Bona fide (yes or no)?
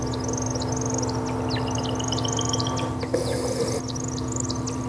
yes